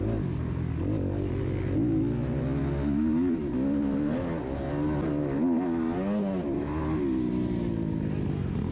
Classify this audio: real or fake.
real